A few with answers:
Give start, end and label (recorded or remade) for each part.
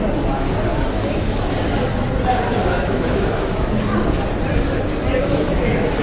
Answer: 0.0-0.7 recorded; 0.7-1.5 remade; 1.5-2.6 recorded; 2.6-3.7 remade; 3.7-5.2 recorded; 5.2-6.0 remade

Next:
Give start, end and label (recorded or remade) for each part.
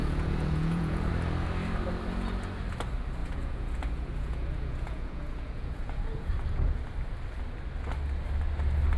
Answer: 0.0-1.1 remade; 1.1-3.2 recorded; 3.2-6.8 remade; 6.8-9.0 recorded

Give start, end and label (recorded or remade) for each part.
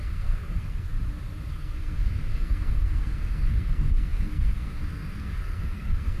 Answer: 0.0-0.9 remade; 0.9-1.5 recorded; 1.5-6.2 remade